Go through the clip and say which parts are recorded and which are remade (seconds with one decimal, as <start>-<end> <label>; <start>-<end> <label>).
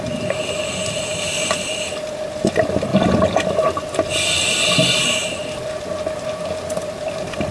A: 0.0-7.5 recorded